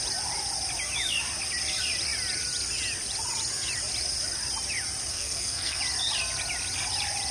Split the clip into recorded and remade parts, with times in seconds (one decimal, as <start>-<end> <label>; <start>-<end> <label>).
0.0-5.1 recorded; 5.1-5.8 remade; 5.8-7.3 recorded